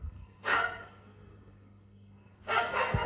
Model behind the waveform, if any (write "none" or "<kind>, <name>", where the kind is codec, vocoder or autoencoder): codec, SNAC